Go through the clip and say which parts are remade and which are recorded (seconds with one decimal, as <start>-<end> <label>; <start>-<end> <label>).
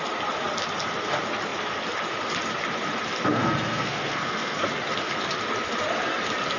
0.0-3.3 recorded; 3.3-4.7 remade; 4.7-6.6 recorded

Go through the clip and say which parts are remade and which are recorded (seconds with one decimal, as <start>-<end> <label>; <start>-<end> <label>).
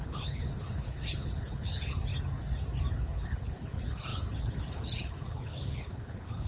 0.0-2.1 remade; 2.1-2.9 recorded; 2.9-6.5 remade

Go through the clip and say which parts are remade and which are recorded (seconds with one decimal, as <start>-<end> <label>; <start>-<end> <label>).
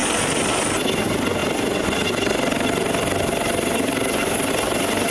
0.0-5.1 recorded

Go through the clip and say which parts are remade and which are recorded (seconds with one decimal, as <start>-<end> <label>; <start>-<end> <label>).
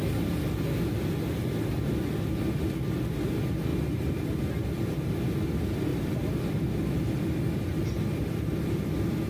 0.0-5.9 recorded; 5.9-9.3 remade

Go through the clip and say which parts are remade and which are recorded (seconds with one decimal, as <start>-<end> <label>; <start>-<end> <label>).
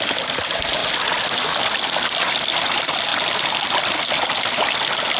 0.0-5.2 recorded